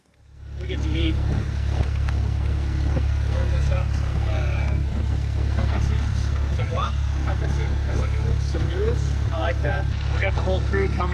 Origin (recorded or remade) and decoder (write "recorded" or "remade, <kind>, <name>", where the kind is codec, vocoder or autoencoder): remade, codec, SNAC